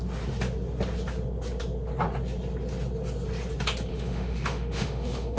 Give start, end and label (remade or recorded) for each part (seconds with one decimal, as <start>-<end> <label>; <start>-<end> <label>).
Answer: 0.0-3.9 recorded; 3.9-5.4 remade